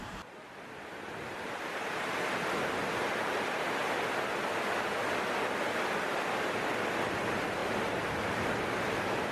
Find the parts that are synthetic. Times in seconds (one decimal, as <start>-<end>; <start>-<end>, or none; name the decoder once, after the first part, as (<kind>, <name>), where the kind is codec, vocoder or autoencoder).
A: 7.6-9.3 (vocoder, BigVGAN v2)